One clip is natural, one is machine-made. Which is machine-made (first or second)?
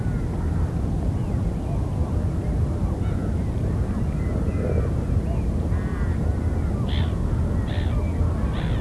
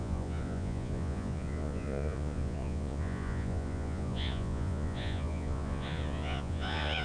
second